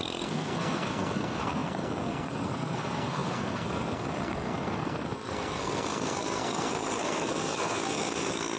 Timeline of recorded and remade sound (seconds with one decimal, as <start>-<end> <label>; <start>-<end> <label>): 0.0-8.6 remade